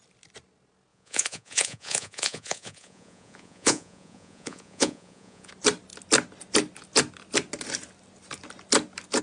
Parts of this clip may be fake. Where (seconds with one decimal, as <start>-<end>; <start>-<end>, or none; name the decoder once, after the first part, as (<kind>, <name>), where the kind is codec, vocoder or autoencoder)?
0.9-5.5 (vocoder, Vocos)